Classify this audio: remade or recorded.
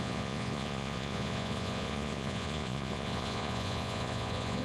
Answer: remade